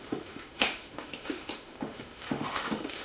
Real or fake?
fake